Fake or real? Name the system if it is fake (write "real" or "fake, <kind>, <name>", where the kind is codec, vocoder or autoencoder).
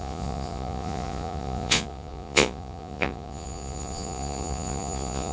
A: fake, vocoder, Vocos